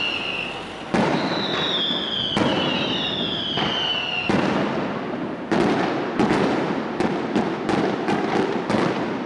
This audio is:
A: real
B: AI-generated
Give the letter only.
A